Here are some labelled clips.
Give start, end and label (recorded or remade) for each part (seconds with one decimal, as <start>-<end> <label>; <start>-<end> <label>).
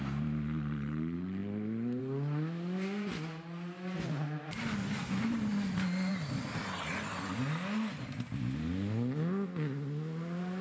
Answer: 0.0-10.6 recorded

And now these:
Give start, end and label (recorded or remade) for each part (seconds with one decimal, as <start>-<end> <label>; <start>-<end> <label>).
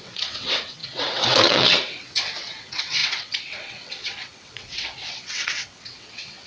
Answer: 0.0-6.5 remade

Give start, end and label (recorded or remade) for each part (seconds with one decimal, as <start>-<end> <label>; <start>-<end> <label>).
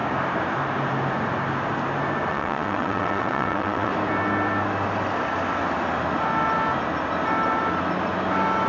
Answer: 0.0-2.3 recorded; 2.3-3.9 remade; 3.9-8.7 recorded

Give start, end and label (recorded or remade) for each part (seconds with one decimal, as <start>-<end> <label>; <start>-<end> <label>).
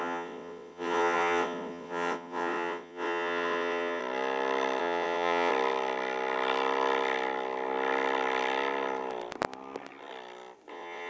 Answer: 0.0-4.0 remade; 4.0-4.8 recorded; 4.8-5.5 remade; 5.5-10.7 recorded; 10.7-11.1 remade